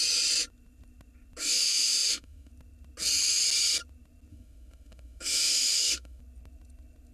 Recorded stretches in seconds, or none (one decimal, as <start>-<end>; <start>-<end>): 0.0-1.4; 2.5-4.3; 6.2-7.1